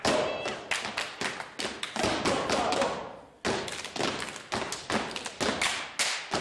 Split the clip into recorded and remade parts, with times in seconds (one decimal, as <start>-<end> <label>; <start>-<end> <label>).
0.0-6.4 recorded